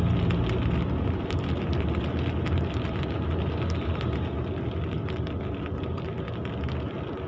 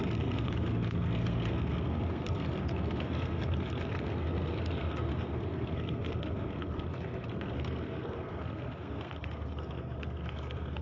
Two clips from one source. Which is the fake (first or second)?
second